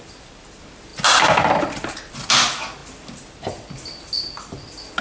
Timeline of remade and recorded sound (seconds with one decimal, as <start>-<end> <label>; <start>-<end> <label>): 0.0-5.0 recorded

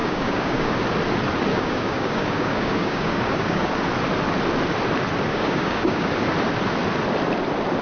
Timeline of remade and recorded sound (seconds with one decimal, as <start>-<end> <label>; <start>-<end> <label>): 0.0-0.7 remade; 0.7-1.5 recorded; 1.5-3.7 remade; 3.7-5.3 recorded; 5.3-6.1 remade; 6.1-7.8 recorded